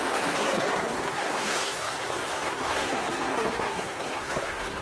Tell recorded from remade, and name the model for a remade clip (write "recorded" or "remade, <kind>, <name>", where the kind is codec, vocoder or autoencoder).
remade, codec, SNAC